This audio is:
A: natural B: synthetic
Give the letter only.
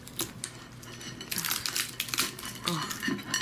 A